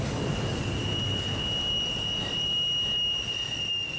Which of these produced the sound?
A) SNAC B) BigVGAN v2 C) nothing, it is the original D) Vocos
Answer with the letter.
C